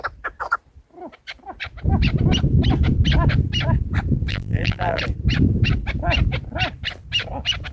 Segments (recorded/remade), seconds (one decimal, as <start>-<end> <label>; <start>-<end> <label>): 0.0-4.3 recorded; 4.3-5.0 remade; 5.0-7.7 recorded